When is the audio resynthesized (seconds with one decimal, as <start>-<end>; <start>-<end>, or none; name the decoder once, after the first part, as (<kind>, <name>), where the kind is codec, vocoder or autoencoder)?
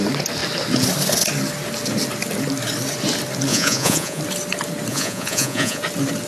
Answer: 3.5-4.2 (vocoder, Vocos); 4.9-5.8